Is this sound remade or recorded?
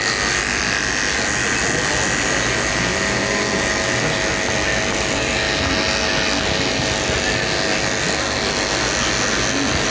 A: recorded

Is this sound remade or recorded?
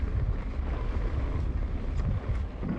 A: recorded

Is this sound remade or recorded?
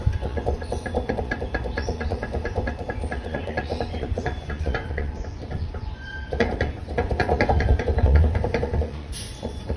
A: remade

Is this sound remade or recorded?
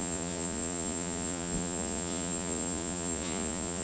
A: remade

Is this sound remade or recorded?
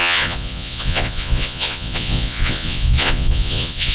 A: remade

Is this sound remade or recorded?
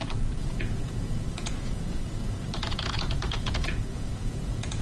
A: remade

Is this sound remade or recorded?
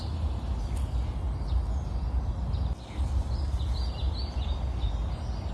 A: recorded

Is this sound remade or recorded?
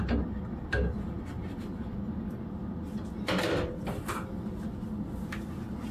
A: recorded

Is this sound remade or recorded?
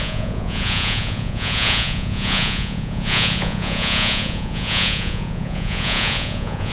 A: remade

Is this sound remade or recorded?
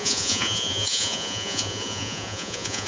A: remade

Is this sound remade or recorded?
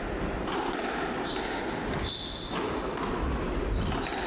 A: recorded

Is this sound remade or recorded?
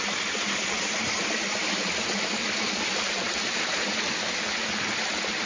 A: recorded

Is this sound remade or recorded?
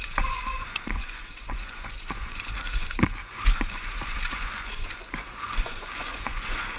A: remade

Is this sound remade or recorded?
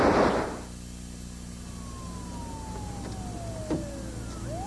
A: recorded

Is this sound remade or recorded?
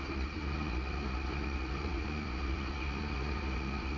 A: remade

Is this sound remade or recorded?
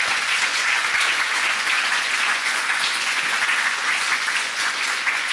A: remade